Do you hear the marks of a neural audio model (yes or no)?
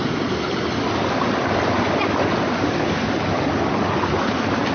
no